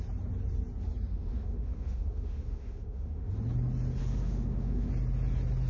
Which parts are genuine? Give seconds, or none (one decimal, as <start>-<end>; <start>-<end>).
0.0-1.1; 3.3-4.0; 4.9-5.7